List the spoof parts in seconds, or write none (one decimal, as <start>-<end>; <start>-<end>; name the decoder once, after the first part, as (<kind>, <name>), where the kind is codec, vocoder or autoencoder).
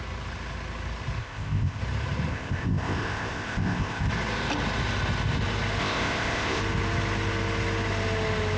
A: 1.2-1.8 (codec, ZipCodec); 2.3-4.1; 5.8-6.6